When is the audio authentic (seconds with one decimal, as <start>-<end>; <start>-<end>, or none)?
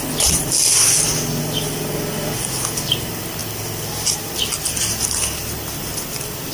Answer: 0.0-6.5